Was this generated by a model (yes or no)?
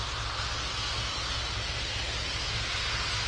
no